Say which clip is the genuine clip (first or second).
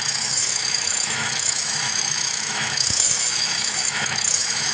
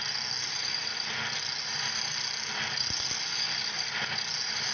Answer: second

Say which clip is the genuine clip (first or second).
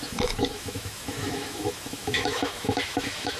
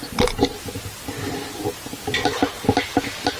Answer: second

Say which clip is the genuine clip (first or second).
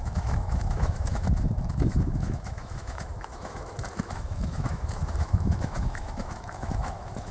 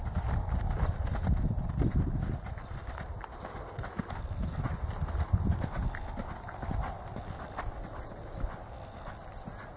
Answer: second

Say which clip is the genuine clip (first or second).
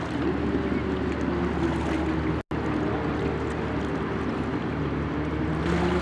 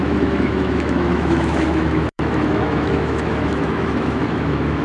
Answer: first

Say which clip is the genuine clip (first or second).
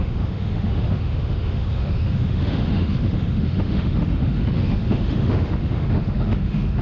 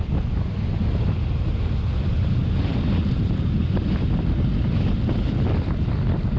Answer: second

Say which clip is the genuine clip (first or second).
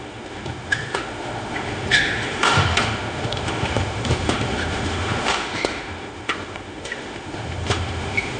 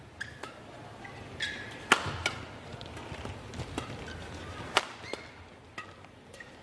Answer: second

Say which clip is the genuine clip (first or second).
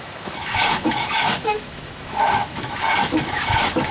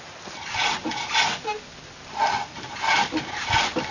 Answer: second